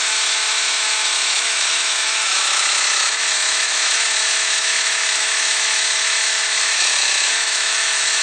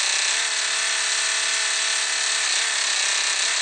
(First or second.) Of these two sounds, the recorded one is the second